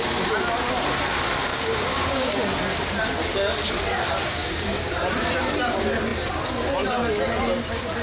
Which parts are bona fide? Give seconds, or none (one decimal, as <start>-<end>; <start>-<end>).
0.0-1.4; 2.4-4.2; 4.9-8.0